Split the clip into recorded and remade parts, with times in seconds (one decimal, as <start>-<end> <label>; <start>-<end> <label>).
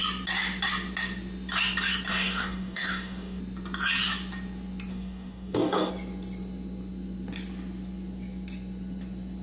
0.0-2.1 recorded; 2.1-3.4 remade; 3.4-4.9 recorded; 4.9-5.9 remade; 5.9-9.4 recorded